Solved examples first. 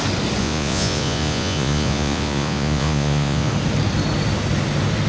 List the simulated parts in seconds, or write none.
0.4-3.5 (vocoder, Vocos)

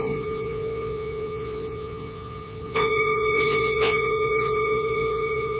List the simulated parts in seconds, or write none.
0.0-5.6 (vocoder, Vocos)

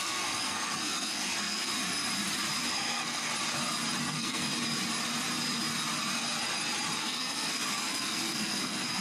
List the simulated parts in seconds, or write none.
0.0-1.7 (codec, SNAC); 2.7-3.3; 4.0-4.5; 7.0-9.0

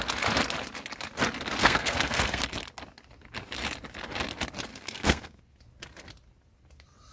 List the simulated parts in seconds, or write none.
1.6-2.4 (codec, SNAC); 4.7-5.4

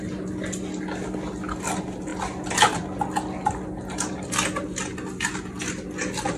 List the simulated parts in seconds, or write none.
none